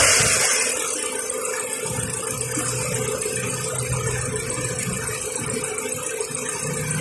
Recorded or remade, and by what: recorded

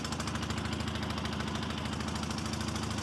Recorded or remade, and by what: recorded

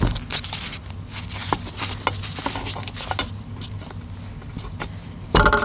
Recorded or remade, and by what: recorded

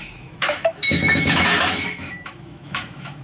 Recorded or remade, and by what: remade, autoencoder, DAC-VAE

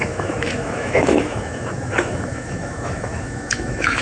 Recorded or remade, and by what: remade, autoencoder, DAC-VAE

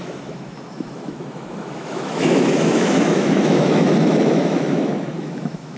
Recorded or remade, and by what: remade, autoencoder, DAC-VAE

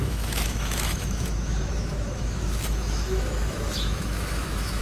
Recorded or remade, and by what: remade, autoencoder, DAC-VAE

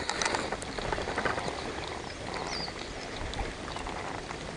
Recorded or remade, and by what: recorded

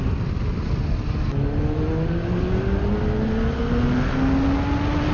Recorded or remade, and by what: recorded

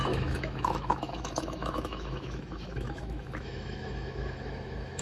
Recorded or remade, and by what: remade, autoencoder, DAC-VAE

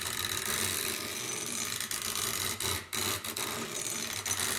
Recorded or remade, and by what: recorded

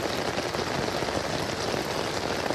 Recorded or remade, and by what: recorded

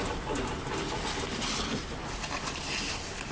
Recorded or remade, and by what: recorded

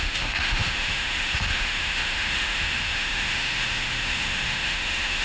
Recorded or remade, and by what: remade, autoencoder, DAC-VAE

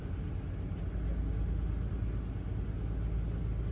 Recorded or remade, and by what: recorded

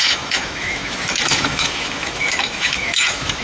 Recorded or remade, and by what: remade, autoencoder, DAC-VAE